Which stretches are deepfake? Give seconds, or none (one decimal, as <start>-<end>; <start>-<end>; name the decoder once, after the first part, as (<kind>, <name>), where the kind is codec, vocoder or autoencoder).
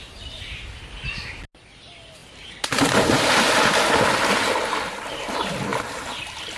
none